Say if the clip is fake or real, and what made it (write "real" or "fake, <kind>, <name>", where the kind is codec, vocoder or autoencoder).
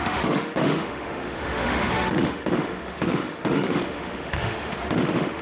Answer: fake, autoencoder, DAC-VAE